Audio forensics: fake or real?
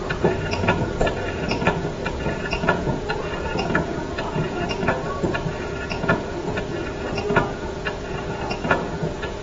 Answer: fake